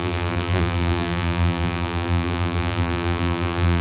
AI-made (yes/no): yes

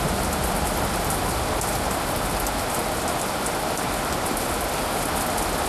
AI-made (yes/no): no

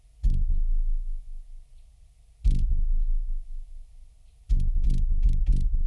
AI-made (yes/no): no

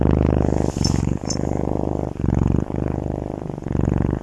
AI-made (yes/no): no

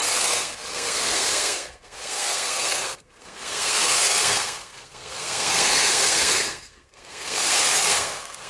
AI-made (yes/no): yes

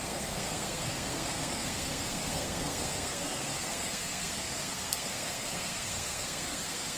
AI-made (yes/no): yes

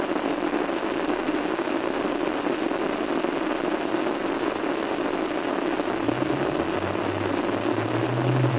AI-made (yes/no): no